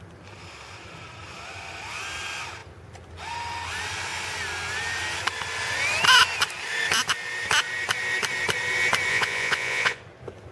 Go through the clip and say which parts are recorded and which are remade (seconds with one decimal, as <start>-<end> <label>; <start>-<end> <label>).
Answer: 0.0-9.1 recorded; 9.1-10.0 remade; 10.0-10.5 recorded